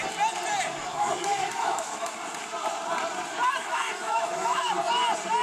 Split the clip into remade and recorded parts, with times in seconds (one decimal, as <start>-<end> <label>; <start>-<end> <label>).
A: 0.0-0.9 recorded; 0.9-2.1 remade; 2.1-3.6 recorded; 3.6-4.7 remade; 4.7-5.4 recorded